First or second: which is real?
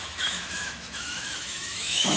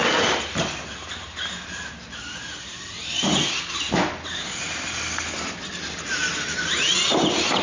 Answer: second